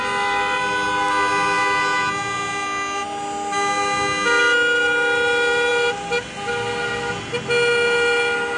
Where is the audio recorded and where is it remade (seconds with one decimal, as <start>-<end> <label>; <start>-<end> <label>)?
0.0-8.6 recorded